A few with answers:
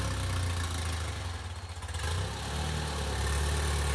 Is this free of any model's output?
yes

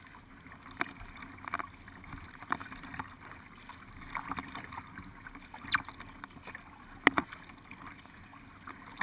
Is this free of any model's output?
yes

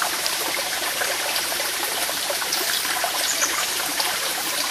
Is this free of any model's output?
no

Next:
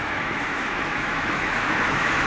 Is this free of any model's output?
no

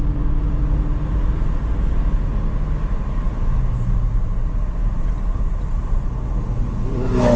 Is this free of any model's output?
yes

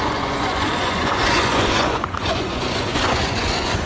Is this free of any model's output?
no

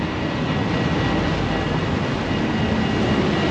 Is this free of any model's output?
yes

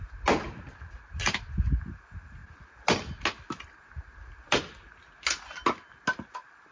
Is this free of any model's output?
yes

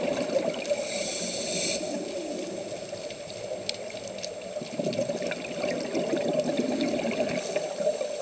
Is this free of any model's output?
yes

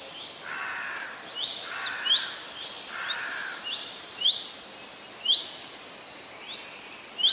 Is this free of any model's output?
yes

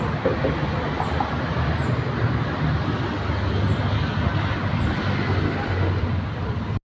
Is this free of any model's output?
yes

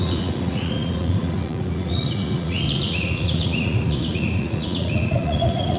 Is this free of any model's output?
no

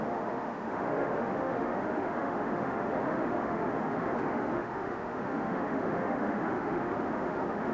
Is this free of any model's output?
no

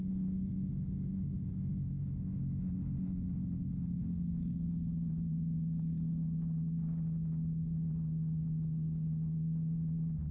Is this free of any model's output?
yes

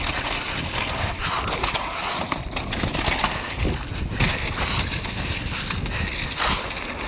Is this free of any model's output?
yes